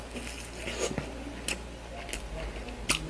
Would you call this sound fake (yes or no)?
no